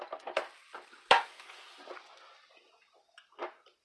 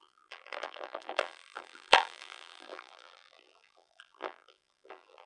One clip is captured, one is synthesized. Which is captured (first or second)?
first